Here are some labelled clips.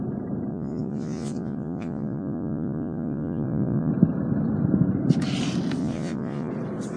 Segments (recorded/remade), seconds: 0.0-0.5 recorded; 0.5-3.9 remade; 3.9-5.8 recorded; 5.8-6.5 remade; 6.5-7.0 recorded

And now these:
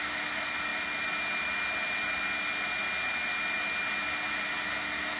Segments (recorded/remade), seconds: 0.0-5.2 recorded